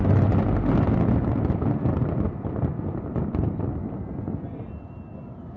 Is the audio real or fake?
real